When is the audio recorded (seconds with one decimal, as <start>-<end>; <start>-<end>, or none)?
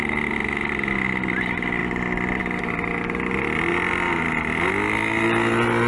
0.0-5.9